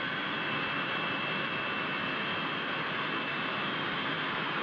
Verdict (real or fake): real